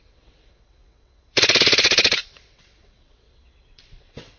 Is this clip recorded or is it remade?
remade